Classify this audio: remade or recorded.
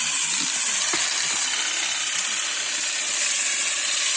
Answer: recorded